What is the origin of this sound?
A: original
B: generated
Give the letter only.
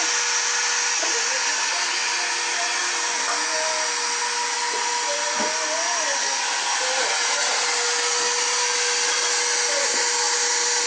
A